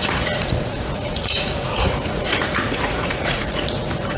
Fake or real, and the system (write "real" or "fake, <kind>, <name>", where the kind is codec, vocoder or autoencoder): fake, vocoder, Vocos